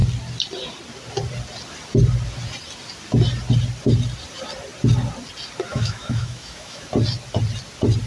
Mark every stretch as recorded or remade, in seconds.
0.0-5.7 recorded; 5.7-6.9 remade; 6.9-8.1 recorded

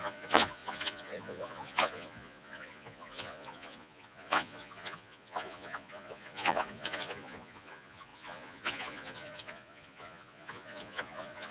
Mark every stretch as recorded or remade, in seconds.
0.0-11.5 remade